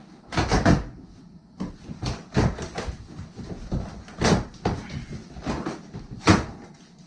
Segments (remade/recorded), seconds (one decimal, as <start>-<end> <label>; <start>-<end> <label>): 0.0-2.5 recorded; 2.5-5.2 remade; 5.2-5.8 recorded; 5.8-7.1 remade